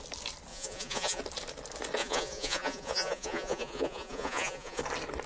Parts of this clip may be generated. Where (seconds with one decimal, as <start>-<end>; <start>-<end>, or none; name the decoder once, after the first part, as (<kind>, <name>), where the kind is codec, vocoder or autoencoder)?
0.5-1.2 (vocoder, Vocos); 2.0-4.8